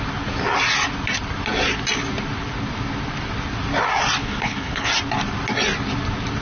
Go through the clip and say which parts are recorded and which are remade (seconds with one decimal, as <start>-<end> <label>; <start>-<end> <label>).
0.0-4.2 recorded; 4.2-4.9 remade; 4.9-6.4 recorded